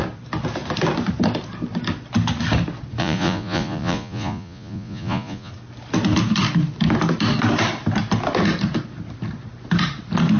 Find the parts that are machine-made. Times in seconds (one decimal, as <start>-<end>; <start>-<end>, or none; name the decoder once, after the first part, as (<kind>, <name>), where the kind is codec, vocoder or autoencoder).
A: 3.0-5.5 (vocoder, Vocos)